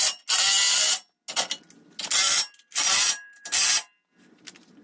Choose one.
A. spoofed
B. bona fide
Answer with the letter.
B